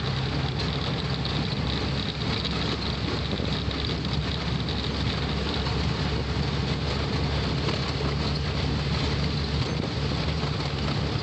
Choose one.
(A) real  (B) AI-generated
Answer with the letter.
A